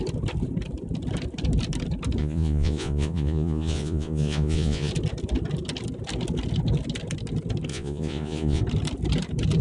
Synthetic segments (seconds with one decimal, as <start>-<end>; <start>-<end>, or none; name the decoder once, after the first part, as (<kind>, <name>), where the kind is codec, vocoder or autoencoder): 2.2-4.9 (vocoder, Vocos); 7.7-8.6